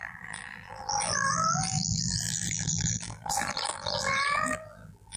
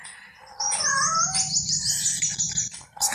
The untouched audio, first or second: second